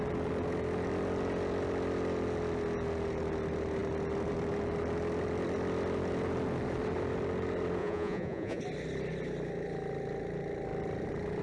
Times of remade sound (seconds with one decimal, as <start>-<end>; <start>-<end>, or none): 7.8-8.6